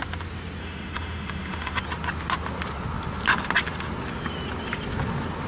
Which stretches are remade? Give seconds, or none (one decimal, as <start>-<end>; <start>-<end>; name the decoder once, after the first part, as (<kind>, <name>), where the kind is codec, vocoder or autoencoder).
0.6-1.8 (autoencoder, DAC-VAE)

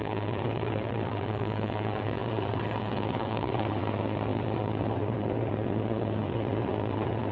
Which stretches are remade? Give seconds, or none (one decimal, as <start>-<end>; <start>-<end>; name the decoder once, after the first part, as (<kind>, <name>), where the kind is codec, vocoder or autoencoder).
0.0-7.3 (vocoder, WaveNeXt)

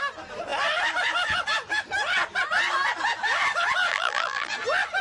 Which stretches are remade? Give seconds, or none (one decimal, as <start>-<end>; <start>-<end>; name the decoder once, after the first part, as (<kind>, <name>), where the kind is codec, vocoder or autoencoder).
3.9-4.5 (vocoder, BigVGAN v2)

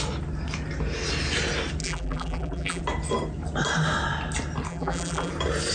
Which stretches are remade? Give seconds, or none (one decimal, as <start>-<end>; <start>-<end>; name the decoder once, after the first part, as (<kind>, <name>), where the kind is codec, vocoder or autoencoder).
1.8-2.8 (vocoder, BigVGAN v2); 4.7-5.3